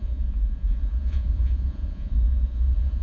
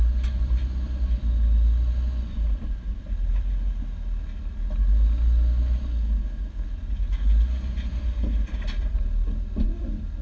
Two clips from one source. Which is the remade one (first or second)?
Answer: first